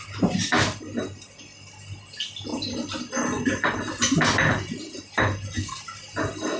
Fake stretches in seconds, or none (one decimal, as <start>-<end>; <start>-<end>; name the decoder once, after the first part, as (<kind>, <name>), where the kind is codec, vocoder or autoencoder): none